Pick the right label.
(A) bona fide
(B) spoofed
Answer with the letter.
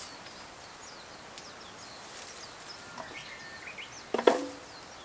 A